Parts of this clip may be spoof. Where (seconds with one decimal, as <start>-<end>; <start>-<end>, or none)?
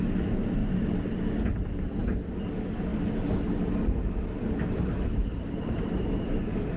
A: 5.3-6.8